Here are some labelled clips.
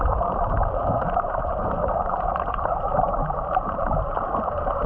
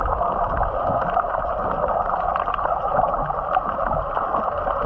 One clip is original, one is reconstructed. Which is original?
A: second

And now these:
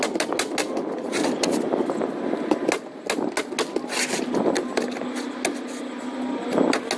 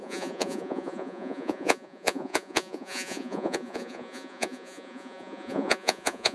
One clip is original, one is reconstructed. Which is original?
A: first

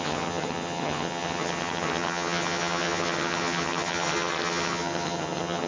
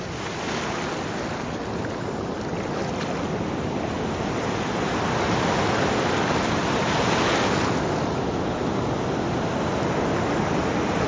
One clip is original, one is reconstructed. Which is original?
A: second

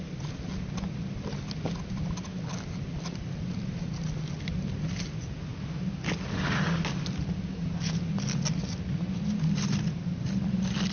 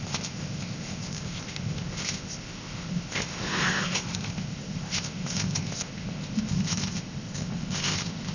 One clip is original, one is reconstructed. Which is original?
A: first